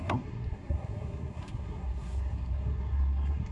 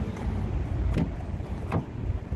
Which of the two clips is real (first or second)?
second